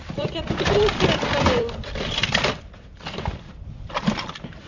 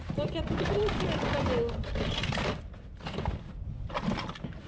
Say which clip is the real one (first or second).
second